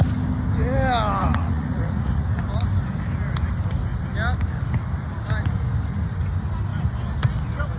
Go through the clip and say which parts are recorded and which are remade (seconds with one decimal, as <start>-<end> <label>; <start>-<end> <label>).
0.0-1.2 recorded; 1.2-2.4 remade; 2.4-7.8 recorded